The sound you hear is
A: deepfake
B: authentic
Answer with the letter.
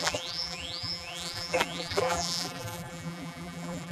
A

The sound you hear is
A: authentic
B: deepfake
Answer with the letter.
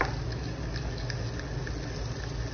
A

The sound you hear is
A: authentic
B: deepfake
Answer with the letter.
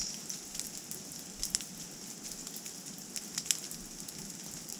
A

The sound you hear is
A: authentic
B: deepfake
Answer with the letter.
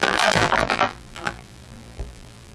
B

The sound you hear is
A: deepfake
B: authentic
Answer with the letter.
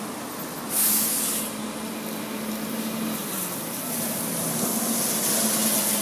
B